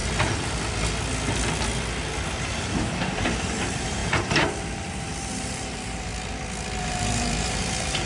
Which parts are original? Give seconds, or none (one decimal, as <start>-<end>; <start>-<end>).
0.0-2.4; 6.1-6.8